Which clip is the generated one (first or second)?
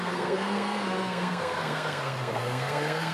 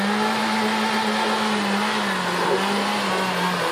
first